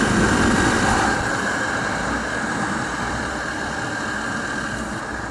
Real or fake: fake